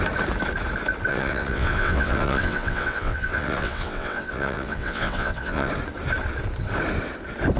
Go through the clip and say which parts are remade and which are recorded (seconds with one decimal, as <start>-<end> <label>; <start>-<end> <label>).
0.0-1.1 recorded; 1.1-5.7 remade; 5.7-7.6 recorded